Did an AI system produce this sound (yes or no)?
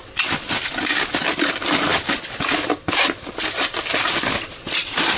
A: yes